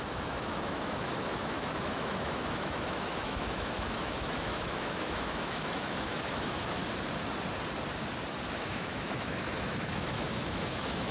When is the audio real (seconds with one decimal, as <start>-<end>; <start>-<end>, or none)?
6.8-8.5